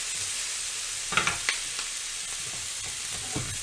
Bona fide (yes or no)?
yes